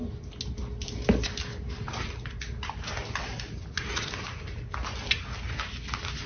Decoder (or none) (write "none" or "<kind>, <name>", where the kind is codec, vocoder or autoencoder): none